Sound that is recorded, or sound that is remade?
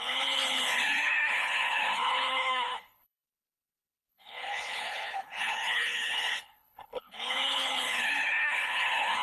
remade